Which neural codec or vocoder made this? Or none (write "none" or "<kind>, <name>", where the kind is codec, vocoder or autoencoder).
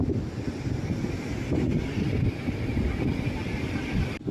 none